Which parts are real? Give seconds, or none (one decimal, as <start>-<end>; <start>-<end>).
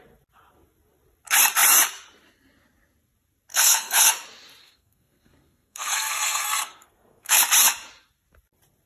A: 0.0-3.5; 4.1-4.6; 7.4-8.9